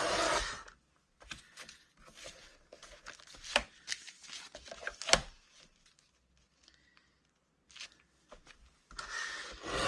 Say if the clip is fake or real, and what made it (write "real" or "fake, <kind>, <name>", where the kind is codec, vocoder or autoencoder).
real